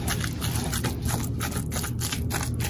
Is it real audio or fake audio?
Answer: real